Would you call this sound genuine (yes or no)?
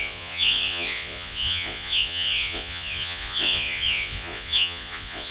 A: no